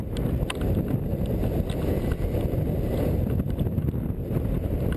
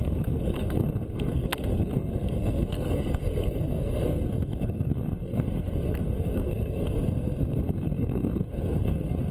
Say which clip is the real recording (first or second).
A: first